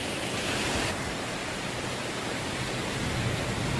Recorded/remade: remade